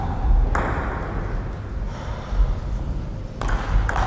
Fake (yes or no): no